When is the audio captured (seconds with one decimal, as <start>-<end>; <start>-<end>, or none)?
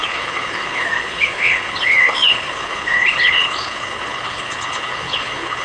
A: none